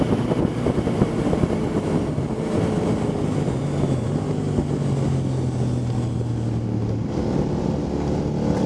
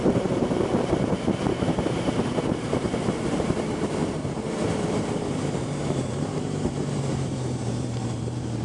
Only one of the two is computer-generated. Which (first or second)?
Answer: second